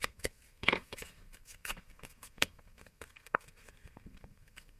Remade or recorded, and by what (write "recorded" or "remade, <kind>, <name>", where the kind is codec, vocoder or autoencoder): remade, codec, SNAC